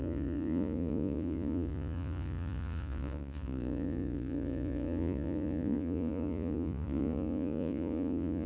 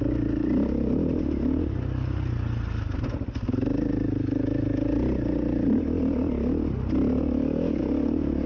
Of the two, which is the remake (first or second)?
first